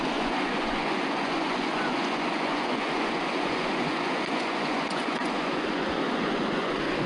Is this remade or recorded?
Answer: remade